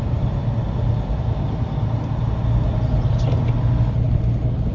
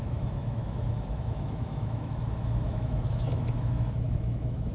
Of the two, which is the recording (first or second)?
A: first